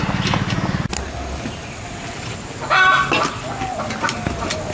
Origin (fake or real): real